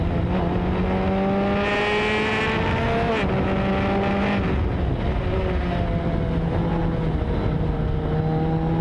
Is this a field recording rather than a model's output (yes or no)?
yes